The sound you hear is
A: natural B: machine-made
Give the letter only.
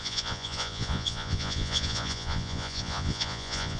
B